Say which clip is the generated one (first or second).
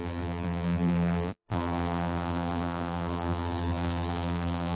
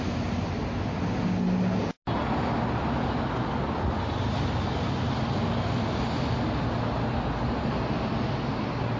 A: first